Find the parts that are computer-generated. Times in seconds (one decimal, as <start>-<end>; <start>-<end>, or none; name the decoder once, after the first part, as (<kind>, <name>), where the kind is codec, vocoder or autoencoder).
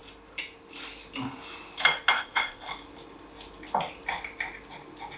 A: 2.1-2.7 (codec, ZipCodec)